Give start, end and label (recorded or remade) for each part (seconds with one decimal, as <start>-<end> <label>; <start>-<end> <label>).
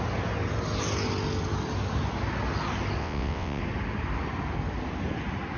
0.0-3.0 recorded; 3.0-3.6 remade; 3.6-5.6 recorded